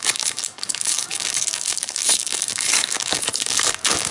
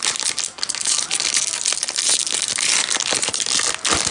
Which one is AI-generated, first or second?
first